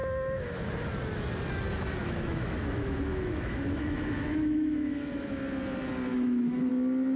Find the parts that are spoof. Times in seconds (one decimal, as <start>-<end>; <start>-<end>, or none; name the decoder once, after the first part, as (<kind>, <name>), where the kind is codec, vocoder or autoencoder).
0.0-0.7 (autoencoder, DAC-VAE); 2.0-5.3; 6.1-6.7